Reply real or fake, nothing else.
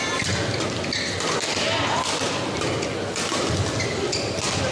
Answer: real